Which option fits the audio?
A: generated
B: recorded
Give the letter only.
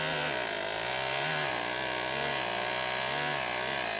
B